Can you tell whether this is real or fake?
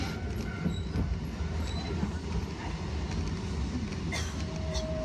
real